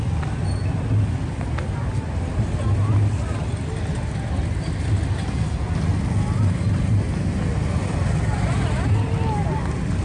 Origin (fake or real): real